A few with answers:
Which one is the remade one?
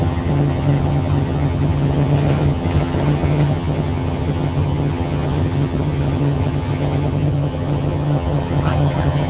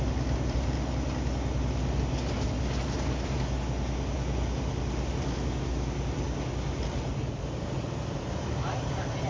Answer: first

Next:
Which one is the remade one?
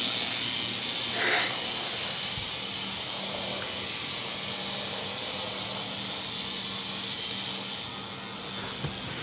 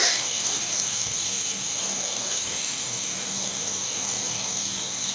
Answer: second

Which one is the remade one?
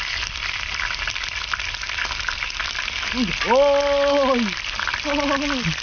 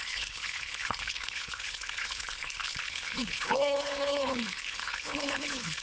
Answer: second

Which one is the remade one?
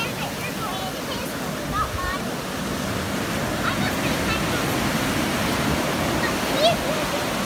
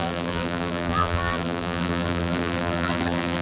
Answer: second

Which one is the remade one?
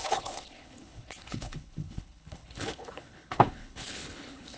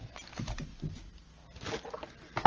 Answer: first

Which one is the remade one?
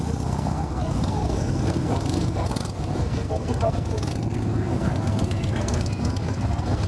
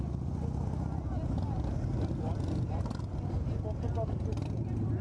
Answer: first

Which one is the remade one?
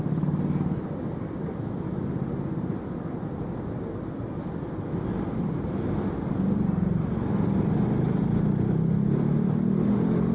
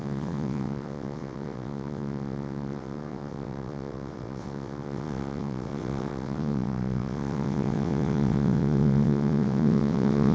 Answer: second